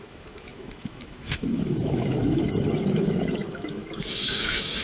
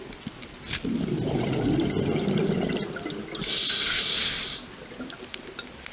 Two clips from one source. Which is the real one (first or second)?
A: second